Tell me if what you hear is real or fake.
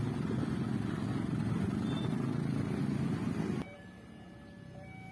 real